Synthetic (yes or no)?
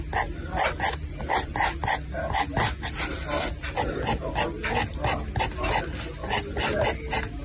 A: no